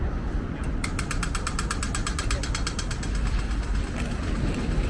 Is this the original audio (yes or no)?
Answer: yes